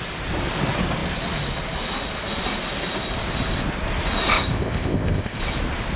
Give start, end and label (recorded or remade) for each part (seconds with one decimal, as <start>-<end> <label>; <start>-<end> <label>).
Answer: 0.0-4.3 recorded; 4.3-5.4 remade; 5.4-6.0 recorded